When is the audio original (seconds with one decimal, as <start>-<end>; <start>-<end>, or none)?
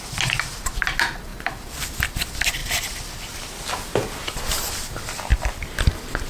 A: 0.0-6.3